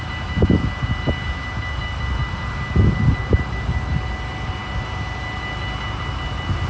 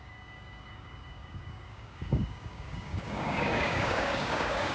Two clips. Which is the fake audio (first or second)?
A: second